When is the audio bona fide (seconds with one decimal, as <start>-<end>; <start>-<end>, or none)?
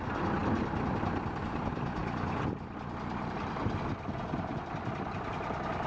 0.0-5.9